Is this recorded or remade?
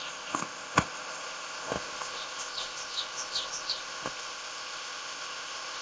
remade